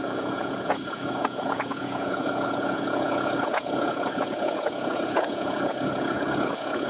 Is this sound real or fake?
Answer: fake